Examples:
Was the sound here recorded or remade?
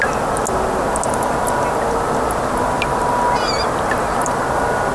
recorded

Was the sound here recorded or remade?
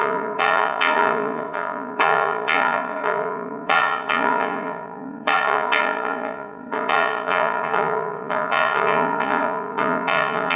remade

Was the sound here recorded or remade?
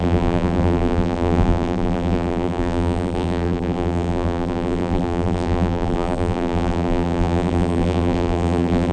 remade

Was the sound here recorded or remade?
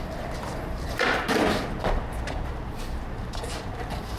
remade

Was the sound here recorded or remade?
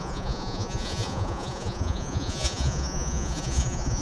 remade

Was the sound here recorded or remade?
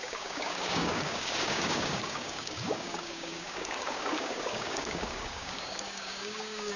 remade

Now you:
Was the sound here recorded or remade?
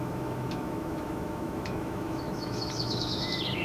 remade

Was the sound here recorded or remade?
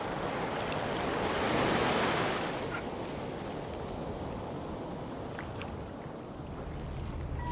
recorded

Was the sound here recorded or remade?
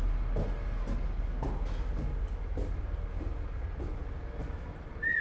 recorded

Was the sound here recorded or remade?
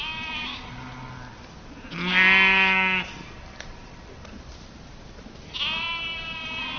recorded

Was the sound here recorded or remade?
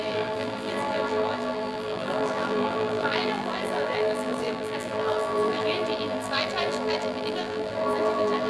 remade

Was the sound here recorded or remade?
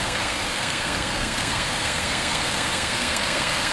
remade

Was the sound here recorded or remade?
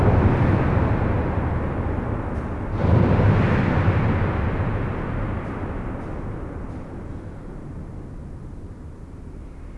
recorded